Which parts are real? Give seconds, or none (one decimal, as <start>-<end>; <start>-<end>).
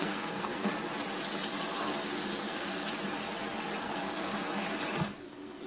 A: 0.7-2.2; 2.8-3.8; 4.3-5.2